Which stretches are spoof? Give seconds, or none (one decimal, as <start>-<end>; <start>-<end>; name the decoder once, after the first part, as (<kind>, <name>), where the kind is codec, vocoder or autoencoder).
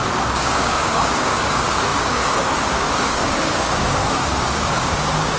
0.0-5.4 (codec, DAC)